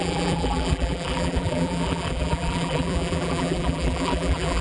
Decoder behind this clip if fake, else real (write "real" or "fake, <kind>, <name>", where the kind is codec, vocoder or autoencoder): fake, vocoder, BigVGAN v2